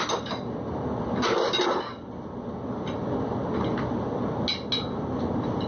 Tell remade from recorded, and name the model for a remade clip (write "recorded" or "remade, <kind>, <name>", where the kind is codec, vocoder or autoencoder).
recorded